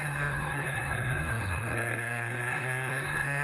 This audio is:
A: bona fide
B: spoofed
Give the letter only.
B